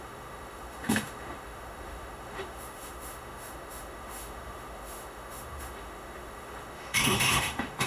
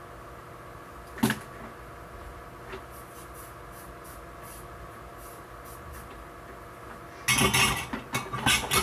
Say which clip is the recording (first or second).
second